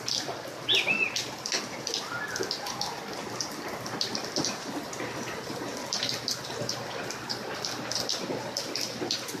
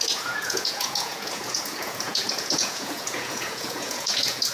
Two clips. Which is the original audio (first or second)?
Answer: first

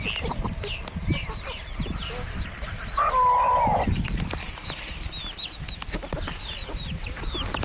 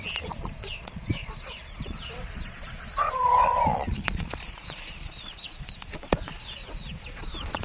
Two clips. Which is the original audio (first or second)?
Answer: first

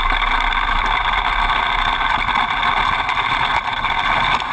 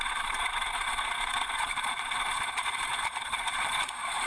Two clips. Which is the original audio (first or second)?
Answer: first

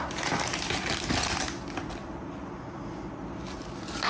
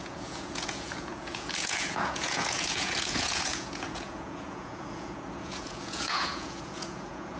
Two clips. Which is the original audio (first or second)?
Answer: first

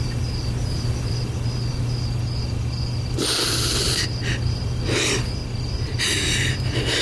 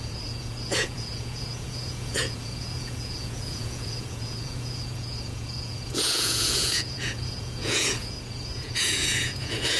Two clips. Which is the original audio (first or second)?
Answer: first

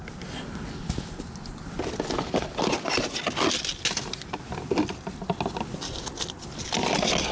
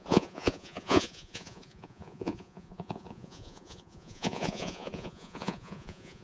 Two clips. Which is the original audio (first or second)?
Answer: first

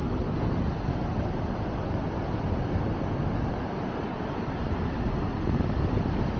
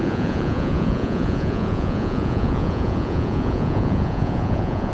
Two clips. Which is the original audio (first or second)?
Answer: first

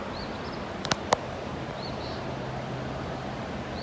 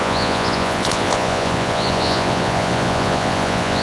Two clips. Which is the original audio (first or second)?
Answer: first